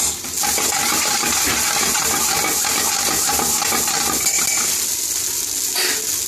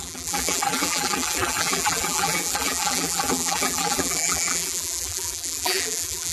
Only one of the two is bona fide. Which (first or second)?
first